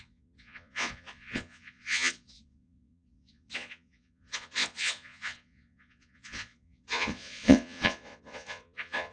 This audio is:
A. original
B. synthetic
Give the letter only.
B